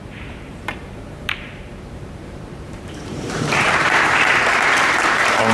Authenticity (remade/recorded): remade